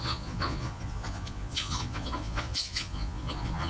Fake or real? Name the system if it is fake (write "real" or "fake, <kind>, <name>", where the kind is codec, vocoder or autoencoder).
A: fake, vocoder, Vocos